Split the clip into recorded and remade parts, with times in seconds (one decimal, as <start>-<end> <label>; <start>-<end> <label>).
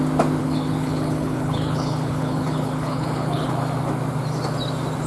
0.0-0.4 recorded; 0.4-3.5 remade; 3.5-5.1 recorded